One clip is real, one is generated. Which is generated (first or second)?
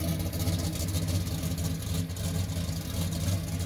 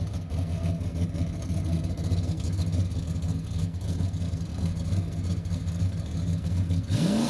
second